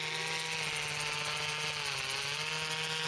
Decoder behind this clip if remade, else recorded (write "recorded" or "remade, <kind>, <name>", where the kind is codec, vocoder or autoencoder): recorded